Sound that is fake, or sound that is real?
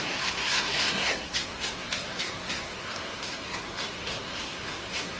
fake